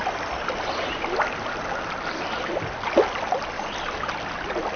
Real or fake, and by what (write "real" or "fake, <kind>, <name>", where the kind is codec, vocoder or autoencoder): real